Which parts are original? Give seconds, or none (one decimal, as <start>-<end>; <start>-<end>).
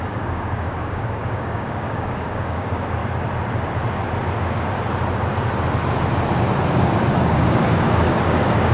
3.0-6.8